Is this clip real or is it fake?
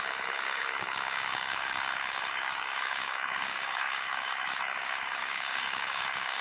fake